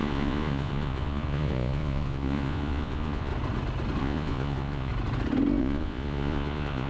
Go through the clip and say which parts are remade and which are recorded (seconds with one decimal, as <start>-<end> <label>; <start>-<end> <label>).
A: 0.0-3.3 remade; 3.3-4.0 recorded; 4.0-4.9 remade; 4.9-5.6 recorded; 5.6-6.9 remade